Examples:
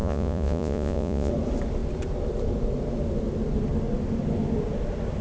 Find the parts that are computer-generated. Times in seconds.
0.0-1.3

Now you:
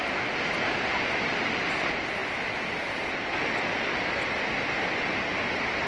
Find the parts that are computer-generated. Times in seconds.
none

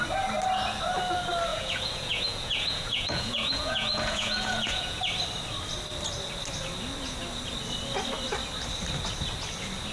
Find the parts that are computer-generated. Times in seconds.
1.5-5.0

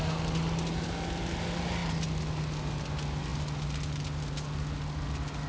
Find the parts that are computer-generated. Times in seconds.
none

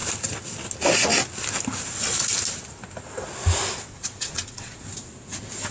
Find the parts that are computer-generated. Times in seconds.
3.9-4.8

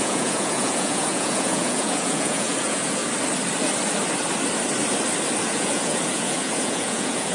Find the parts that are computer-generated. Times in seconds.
0.0-3.0; 5.4-7.3